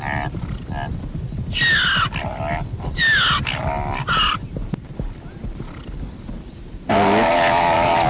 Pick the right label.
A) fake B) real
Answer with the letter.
B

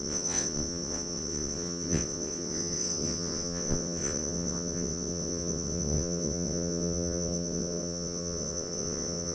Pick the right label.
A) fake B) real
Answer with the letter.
A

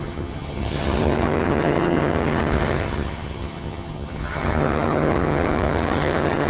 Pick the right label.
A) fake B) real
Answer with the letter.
A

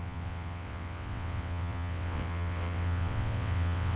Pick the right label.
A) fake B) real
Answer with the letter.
A